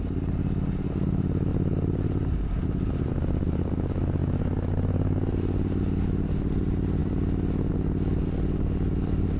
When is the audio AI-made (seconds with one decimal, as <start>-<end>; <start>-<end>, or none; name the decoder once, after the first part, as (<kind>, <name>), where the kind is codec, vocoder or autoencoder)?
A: 1.5-3.1 (vocoder, BigVGAN v2)